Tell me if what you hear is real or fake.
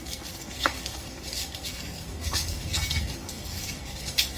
fake